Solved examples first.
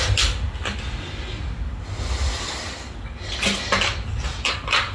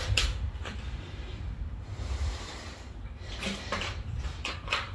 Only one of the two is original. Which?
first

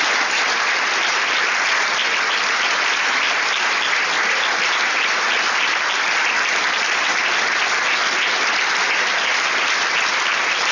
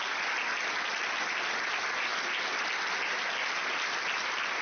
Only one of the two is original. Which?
second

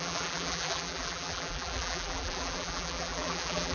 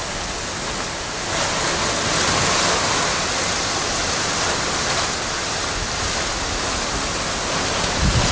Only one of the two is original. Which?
second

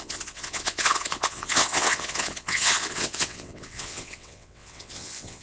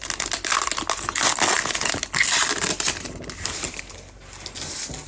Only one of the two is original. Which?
second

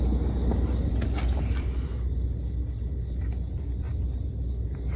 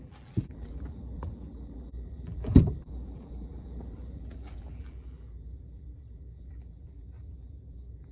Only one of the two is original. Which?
first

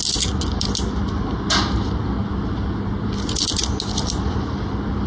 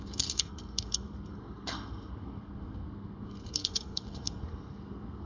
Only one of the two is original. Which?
first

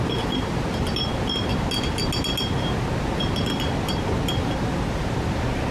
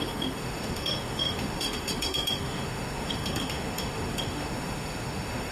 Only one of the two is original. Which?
first